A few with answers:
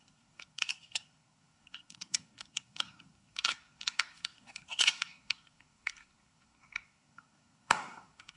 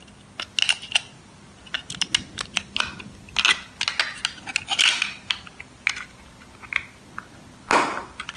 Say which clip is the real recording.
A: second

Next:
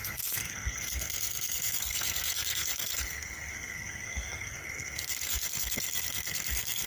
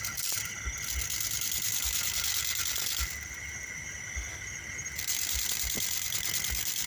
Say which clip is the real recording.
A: second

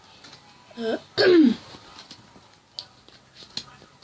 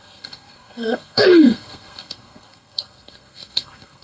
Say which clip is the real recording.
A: first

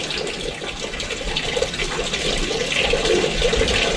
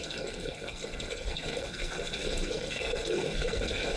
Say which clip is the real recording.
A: first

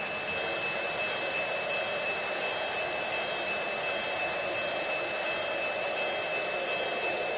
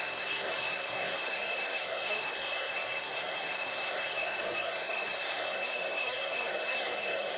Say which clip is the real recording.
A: first